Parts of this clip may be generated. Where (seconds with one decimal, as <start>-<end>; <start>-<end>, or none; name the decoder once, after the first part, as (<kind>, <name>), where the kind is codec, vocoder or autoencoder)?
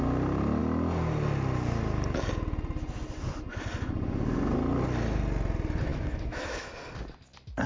5.9-6.7 (autoencoder, DAC-VAE)